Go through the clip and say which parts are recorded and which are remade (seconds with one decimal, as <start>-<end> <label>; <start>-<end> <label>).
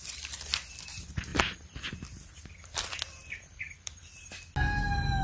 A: 0.0-1.3 recorded; 1.3-2.4 remade; 2.4-3.2 recorded; 3.2-3.9 remade; 3.9-5.2 recorded